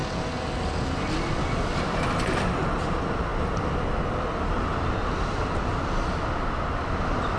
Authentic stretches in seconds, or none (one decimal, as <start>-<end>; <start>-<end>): 0.0-7.4